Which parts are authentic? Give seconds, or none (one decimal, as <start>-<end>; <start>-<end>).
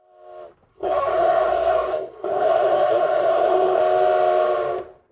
0.0-0.7; 3.8-5.1